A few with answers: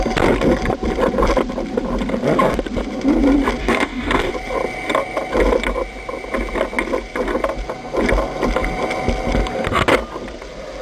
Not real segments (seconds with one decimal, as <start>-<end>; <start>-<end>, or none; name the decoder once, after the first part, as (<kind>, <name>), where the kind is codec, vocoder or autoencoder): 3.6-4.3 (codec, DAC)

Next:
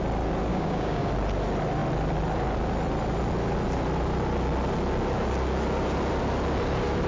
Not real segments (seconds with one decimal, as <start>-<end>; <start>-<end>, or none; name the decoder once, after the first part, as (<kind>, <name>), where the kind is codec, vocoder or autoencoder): 0.5-1.1 (codec, DAC)

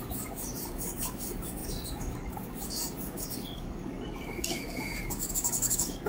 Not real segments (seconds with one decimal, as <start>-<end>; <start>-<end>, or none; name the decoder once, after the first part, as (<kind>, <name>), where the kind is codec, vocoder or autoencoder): 0.0-6.1 (codec, DAC)